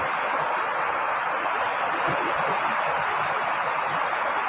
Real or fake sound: real